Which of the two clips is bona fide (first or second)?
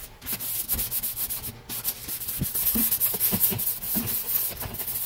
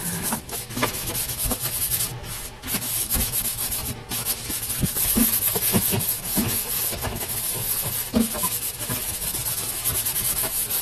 first